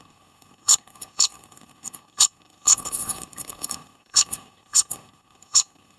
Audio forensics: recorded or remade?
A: remade